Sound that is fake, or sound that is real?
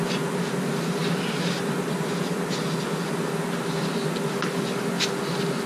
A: real